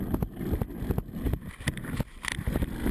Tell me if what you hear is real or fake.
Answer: real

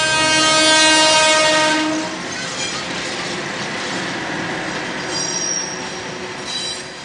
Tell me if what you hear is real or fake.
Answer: real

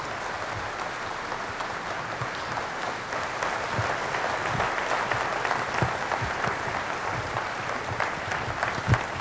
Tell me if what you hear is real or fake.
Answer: real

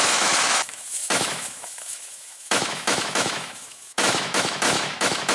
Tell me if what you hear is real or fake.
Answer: fake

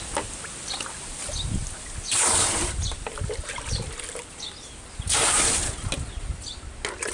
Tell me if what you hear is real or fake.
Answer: real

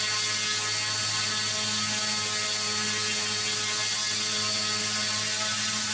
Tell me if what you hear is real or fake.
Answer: real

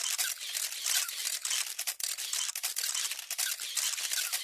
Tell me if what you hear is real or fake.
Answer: real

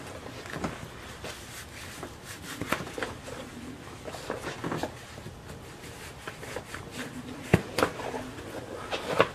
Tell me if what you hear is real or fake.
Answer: real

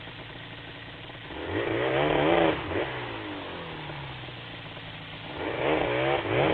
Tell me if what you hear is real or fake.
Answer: real